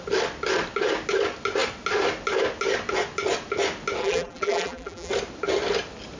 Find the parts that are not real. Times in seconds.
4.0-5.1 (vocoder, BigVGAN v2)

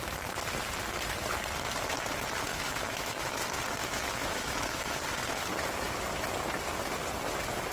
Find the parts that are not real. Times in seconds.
2.5-3.4 (autoencoder, DAC-VAE); 3.8-5.0

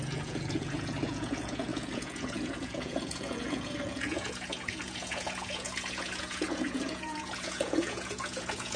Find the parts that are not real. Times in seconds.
0.0-8.8 (vocoder, Vocos)

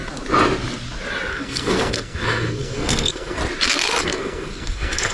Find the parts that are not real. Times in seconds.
1.3-3.4 (codec, SNAC); 4.0-5.1

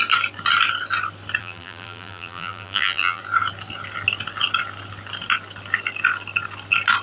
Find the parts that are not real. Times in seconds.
1.4-3.2 (vocoder, BigVGAN v2)

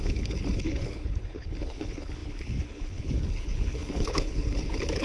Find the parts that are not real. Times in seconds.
0.0-5.0 (codec, HILCodec)